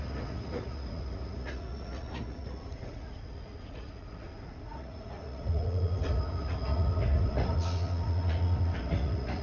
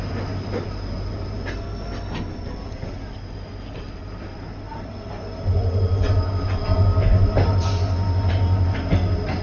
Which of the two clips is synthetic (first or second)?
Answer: first